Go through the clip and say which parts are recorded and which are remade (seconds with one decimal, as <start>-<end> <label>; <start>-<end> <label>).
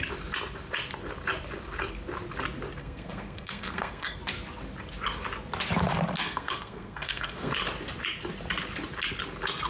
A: 0.0-2.8 recorded; 2.8-4.2 remade; 4.2-6.2 recorded; 6.2-7.5 remade; 7.5-9.7 recorded